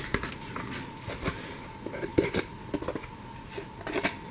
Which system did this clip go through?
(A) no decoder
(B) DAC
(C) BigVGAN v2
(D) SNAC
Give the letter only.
C